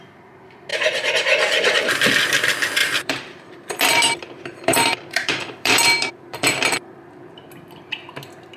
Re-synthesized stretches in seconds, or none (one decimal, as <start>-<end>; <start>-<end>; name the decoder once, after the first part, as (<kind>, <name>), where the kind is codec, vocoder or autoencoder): 0.7-1.9 (vocoder, BigVGAN v2); 2.8-7.5